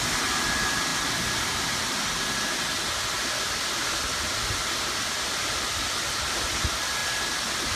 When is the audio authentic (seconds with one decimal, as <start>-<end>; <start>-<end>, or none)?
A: 0.0-7.8